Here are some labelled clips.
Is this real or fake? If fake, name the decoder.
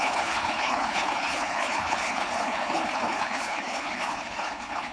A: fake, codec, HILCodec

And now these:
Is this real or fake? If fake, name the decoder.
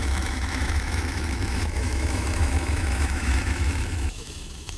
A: fake, autoencoder, DAC-VAE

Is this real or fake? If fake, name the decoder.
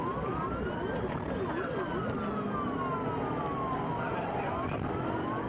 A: real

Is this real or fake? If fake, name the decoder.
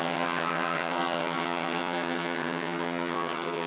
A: fake, vocoder, HiFi-GAN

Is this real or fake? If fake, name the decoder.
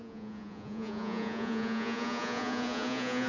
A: fake, vocoder, Vocos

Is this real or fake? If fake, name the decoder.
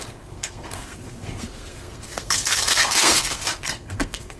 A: fake, codec, SNAC